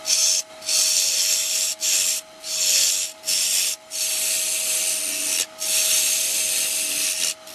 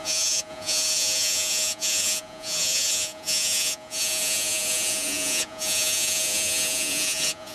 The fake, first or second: second